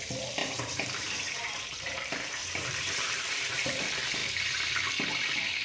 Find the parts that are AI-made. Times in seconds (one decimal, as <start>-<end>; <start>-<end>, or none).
0.4-3.8

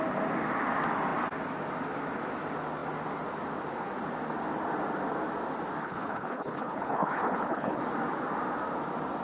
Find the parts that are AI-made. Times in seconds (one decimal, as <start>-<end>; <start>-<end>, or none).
5.8-7.8